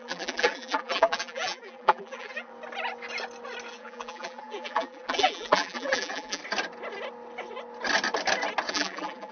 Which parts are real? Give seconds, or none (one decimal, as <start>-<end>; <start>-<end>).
2.5-3.7; 6.4-8.7